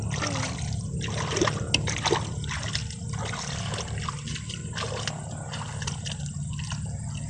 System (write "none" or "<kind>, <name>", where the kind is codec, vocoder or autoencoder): none